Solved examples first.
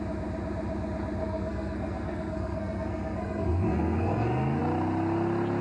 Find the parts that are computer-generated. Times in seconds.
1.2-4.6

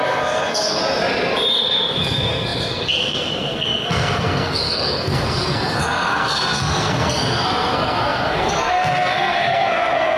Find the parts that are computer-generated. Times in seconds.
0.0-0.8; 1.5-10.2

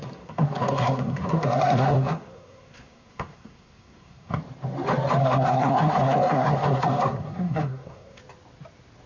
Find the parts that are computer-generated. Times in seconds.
0.0-4.4; 5.2-8.2

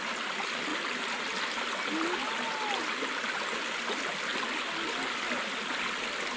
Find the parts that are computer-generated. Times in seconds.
none